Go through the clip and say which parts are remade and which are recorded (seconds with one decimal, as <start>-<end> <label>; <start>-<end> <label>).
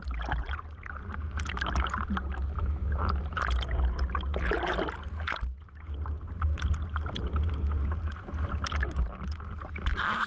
0.0-10.3 recorded